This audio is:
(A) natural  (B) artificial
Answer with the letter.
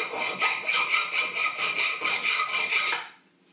A